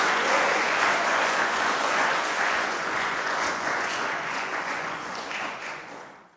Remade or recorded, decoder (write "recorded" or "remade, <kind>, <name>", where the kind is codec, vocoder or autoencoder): remade, vocoder, Vocos